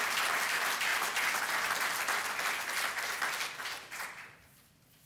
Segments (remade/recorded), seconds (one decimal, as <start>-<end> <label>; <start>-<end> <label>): 0.0-0.9 remade; 0.9-4.0 recorded; 4.0-5.1 remade